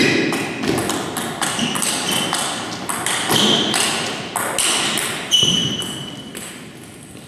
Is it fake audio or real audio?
real